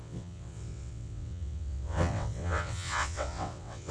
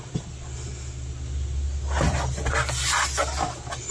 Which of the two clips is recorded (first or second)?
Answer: second